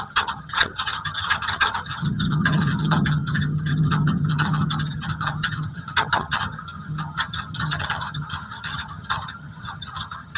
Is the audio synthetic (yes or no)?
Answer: yes